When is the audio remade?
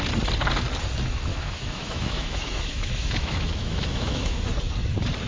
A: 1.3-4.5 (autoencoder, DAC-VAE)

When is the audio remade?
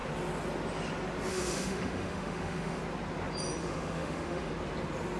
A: 1.3-2.8 (autoencoder, DAC-VAE); 3.6-4.5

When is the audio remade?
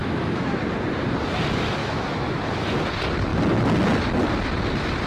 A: 0.0-0.6 (autoencoder, DAC-VAE); 1.8-2.4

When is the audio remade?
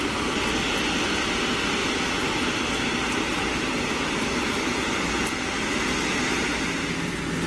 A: none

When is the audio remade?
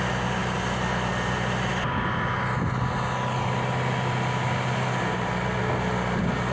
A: none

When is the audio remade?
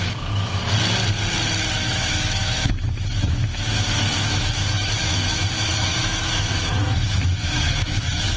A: 0.0-0.6 (autoencoder, DAC-VAE); 1.8-8.4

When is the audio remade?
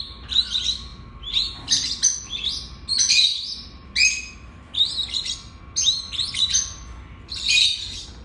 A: none